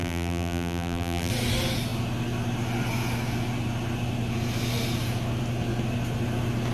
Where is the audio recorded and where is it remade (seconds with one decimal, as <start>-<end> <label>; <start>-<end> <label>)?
0.0-1.3 remade; 1.3-6.7 recorded